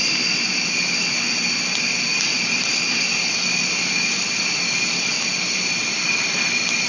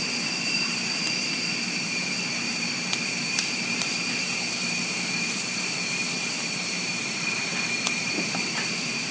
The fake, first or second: second